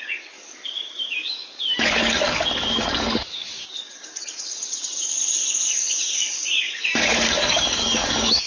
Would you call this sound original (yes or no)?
no